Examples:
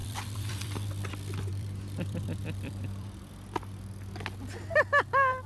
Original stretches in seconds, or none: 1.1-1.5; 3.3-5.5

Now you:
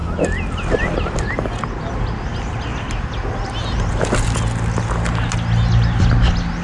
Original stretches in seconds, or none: 0.0-6.6

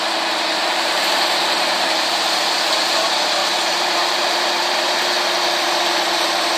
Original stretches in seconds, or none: 0.0-0.6; 2.9-3.4; 5.0-6.6